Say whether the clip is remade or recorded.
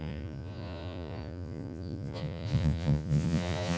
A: remade